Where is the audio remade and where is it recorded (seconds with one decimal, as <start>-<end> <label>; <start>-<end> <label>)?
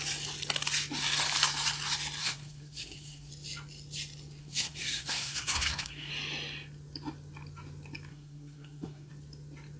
0.0-2.2 recorded; 2.2-3.3 remade; 3.3-4.4 recorded; 4.4-6.1 remade; 6.1-8.1 recorded; 8.1-9.1 remade; 9.1-9.8 recorded